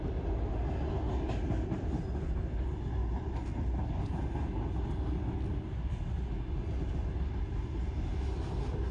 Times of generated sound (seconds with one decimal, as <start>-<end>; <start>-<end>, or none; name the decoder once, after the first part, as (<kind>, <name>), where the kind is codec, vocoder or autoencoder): none